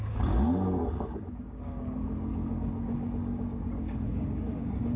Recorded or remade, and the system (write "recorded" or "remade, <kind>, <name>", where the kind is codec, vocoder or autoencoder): remade, codec, DAC